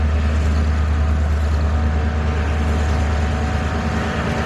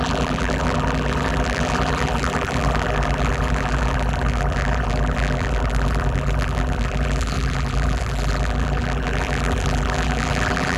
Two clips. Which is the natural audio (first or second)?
first